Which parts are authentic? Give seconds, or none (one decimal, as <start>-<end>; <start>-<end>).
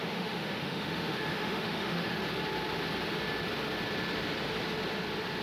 2.2-5.4